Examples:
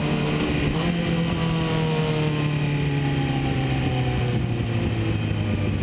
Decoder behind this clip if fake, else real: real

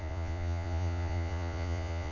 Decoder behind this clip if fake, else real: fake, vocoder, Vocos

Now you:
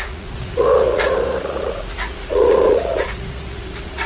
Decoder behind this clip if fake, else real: fake, vocoder, Vocos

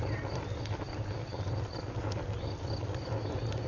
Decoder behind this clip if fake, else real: real